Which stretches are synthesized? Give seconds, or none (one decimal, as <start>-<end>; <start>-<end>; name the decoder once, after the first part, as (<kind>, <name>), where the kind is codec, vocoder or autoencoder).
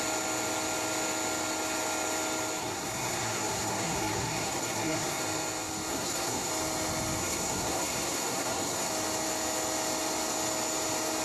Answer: 2.6-5.2 (codec, SNAC); 5.9-6.5; 7.2-8.9